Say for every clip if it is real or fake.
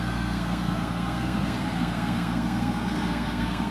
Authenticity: fake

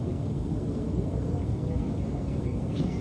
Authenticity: fake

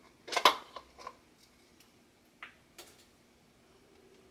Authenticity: real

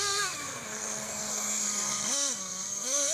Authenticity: fake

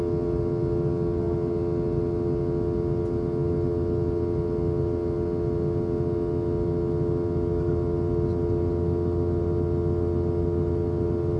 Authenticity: real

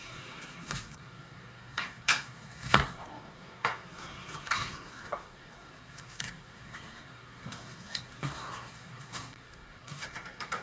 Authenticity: fake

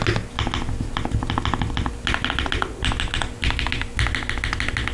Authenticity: real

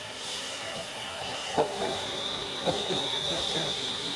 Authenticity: fake